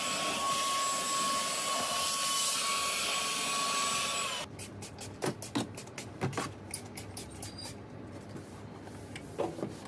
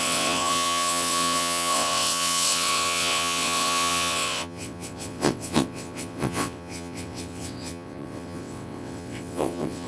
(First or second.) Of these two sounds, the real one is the first